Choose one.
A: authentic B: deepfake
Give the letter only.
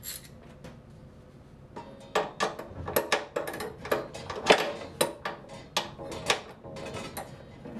A